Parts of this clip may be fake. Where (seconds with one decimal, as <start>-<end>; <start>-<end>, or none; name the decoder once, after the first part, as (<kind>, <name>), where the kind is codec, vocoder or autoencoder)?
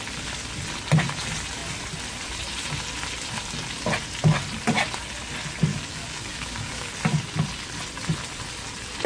5.7-6.9 (codec, DAC)